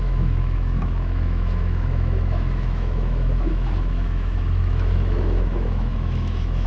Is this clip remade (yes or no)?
yes